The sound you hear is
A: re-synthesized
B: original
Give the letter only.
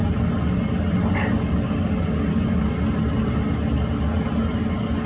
B